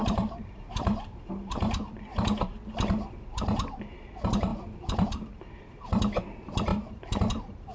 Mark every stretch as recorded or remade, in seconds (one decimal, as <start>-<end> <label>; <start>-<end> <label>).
0.0-1.5 remade; 1.5-4.5 recorded; 4.5-5.3 remade; 5.3-6.7 recorded; 6.7-7.3 remade; 7.3-7.7 recorded